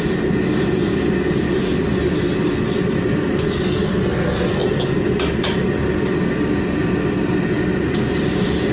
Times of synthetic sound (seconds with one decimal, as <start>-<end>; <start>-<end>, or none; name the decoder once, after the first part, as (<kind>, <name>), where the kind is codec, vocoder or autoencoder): none